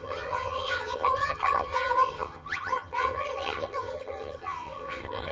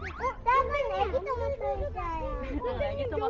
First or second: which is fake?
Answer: first